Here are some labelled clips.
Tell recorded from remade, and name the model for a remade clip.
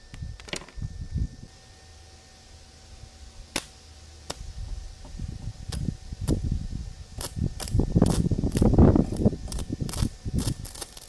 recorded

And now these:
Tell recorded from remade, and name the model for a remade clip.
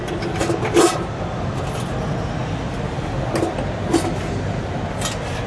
recorded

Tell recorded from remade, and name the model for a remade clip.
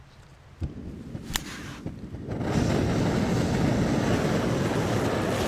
recorded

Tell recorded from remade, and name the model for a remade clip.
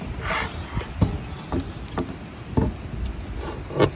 recorded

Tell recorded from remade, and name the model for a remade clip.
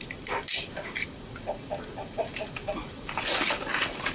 recorded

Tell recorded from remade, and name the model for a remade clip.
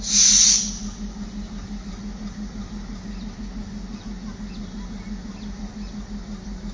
recorded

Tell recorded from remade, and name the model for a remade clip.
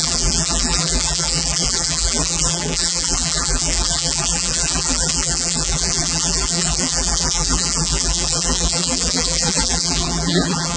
remade, vocoder, BigVGAN v2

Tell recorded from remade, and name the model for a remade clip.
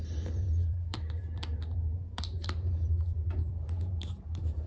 remade, vocoder, BigVGAN v2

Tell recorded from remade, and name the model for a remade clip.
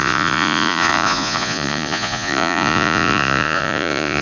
remade, vocoder, Vocos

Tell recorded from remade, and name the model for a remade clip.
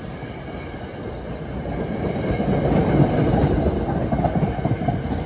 recorded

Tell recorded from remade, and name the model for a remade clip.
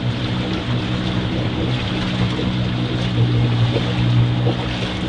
recorded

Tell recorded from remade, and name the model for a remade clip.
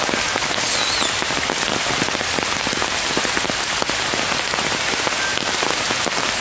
recorded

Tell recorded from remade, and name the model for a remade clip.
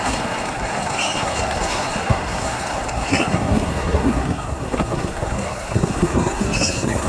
remade, codec, SNAC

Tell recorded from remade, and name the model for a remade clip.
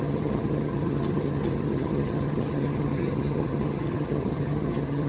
remade, vocoder, HiFi-GAN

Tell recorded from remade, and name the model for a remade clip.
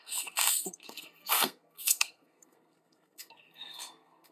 remade, codec, SNAC